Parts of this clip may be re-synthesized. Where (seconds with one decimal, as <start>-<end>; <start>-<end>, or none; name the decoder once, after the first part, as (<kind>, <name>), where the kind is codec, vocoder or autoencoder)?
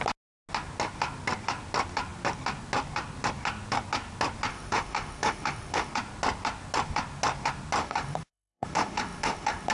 4.5-5.9 (autoencoder, DAC-VAE); 7.8-9.7